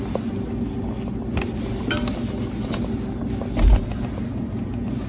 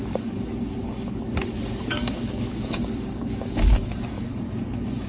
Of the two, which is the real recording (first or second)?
first